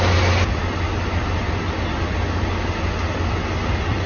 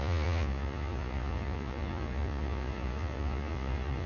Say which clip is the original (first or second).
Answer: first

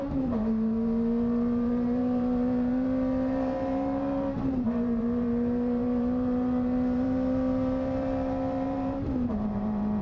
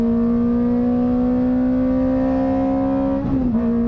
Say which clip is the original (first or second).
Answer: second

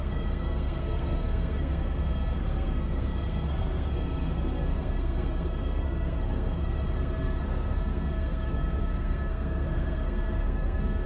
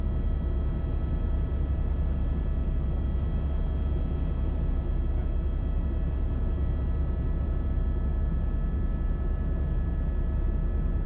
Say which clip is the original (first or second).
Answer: second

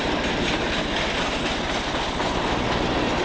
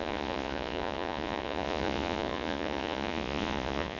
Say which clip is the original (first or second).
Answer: first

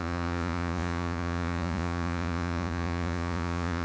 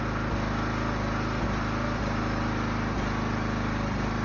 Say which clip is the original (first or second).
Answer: second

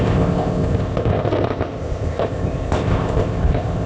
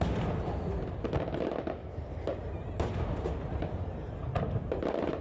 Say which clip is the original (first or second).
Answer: second